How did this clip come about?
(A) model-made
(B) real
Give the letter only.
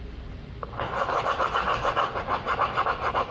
B